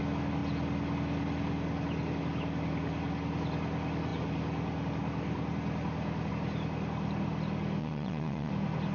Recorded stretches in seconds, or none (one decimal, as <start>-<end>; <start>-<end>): 0.0-7.8; 8.5-8.9